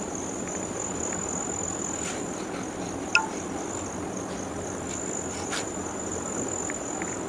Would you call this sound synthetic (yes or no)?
no